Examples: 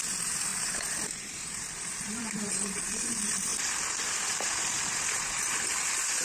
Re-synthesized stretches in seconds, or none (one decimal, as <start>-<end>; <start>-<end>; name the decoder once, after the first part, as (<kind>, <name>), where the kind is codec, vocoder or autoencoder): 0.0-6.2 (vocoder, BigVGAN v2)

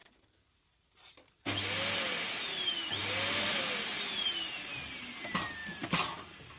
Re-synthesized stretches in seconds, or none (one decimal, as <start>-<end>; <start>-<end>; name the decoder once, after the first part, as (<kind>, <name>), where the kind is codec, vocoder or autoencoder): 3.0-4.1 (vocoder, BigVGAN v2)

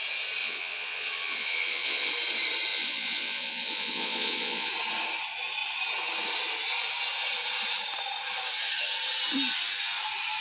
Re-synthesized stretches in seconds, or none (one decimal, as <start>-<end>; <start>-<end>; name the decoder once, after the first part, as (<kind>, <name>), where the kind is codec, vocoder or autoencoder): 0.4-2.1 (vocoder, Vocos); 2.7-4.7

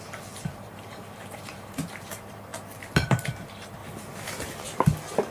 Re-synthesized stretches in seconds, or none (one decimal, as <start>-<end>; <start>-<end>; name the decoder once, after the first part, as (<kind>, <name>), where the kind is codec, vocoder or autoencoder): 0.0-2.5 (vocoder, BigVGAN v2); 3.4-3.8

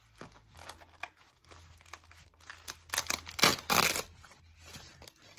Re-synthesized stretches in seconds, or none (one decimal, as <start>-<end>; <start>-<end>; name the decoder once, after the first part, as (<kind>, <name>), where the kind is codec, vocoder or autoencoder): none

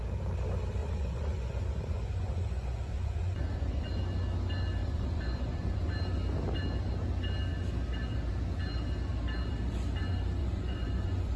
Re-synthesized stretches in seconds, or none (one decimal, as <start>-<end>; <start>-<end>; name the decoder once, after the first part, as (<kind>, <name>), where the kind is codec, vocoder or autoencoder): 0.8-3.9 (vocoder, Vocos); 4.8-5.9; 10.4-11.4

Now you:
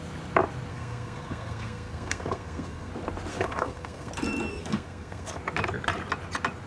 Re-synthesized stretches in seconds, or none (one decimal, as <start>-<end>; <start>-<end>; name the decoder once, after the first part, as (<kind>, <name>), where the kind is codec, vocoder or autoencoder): 0.7-2.9 (codec, SNAC); 3.3-4.1; 4.5-5.4

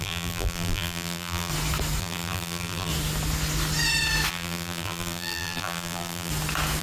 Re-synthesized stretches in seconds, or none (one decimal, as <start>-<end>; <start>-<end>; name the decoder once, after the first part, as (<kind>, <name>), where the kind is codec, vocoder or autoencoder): 0.0-1.5 (vocoder, BigVGAN v2); 2.0-2.9; 4.3-6.3